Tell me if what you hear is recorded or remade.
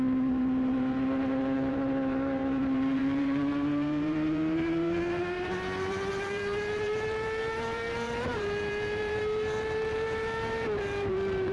remade